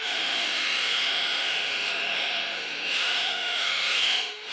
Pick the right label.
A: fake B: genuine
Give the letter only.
A